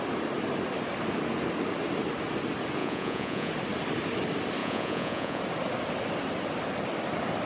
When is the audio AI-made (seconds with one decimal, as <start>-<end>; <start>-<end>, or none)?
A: 2.8-3.5; 4.6-5.4